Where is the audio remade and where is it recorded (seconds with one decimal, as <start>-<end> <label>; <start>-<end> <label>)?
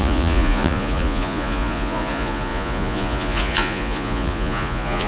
0.0-5.1 remade